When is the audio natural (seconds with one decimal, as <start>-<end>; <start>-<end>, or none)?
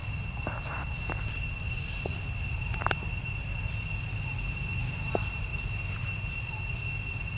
0.0-7.4